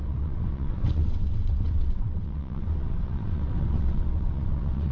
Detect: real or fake fake